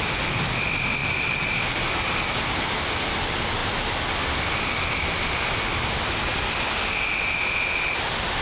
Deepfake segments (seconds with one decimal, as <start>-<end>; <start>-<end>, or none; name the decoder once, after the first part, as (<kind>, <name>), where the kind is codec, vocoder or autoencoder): 1.0-2.0 (vocoder, BigVGAN v2)